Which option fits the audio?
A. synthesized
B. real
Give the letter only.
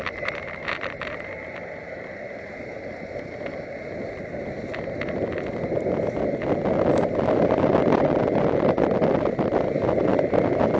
B